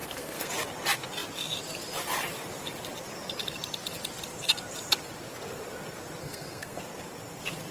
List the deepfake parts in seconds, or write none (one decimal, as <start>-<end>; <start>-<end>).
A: 0.0-0.5; 6.2-6.8